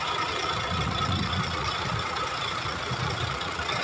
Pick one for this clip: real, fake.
fake